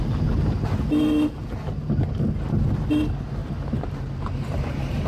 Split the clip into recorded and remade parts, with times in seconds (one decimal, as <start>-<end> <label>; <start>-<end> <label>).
0.0-3.4 recorded; 3.4-5.1 remade